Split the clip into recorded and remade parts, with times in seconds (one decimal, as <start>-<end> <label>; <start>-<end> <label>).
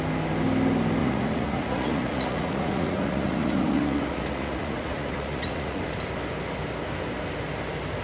0.0-1.0 recorded; 1.0-5.8 remade; 5.8-8.0 recorded